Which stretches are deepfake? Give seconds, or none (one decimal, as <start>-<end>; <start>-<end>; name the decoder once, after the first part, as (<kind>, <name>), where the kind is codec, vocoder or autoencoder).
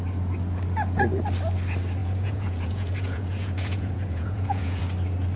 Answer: 2.0-4.8 (vocoder, Vocos)